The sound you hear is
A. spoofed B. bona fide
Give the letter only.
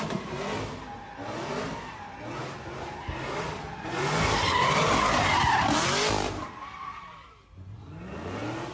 B